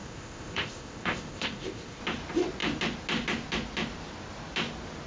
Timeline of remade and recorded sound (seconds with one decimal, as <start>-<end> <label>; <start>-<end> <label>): 0.0-2.0 remade; 2.0-5.1 recorded